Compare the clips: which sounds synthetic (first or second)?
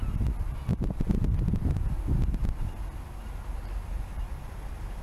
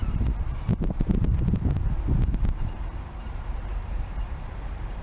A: second